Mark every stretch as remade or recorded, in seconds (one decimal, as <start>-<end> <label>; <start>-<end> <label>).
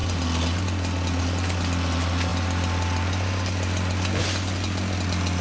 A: 0.0-5.4 recorded